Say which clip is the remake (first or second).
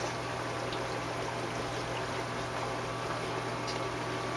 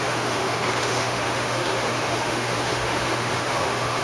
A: second